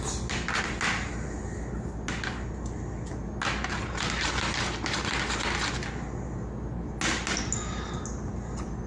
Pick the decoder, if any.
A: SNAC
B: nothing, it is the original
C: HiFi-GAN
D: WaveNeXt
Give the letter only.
B